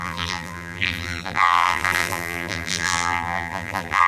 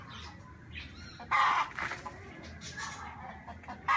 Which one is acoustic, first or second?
second